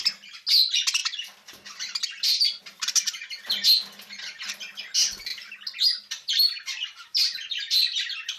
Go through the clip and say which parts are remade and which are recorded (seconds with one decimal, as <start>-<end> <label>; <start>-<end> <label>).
0.0-1.0 recorded; 1.0-2.6 remade; 2.6-5.3 recorded; 5.3-8.4 remade